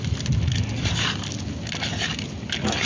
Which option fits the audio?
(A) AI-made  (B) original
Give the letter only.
B